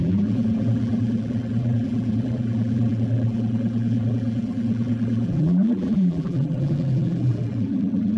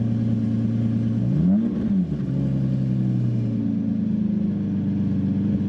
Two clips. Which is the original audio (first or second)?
second